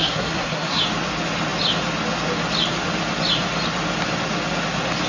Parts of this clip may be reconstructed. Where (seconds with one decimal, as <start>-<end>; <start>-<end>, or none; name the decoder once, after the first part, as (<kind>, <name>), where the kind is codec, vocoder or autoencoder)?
0.0-0.8 (codec, SNAC)